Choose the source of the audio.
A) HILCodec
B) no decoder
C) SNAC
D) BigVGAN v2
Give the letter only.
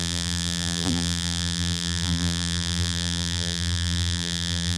D